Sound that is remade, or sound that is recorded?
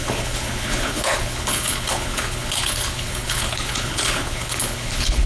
remade